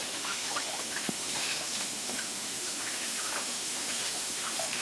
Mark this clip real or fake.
fake